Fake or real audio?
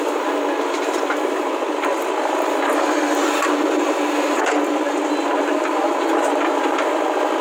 real